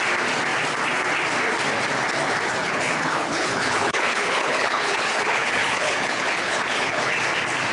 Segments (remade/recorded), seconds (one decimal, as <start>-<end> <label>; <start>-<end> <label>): 0.0-2.6 recorded; 2.6-7.2 remade; 7.2-7.7 recorded